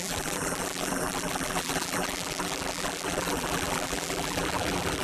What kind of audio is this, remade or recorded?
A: remade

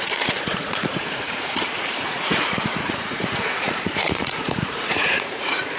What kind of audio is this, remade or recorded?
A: remade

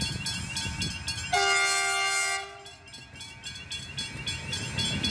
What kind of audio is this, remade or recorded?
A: recorded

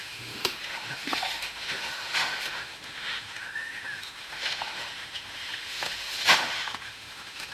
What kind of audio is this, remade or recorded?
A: remade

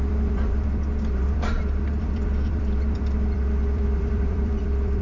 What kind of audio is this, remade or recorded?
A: remade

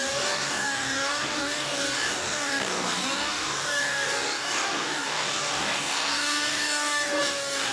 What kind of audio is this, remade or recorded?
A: remade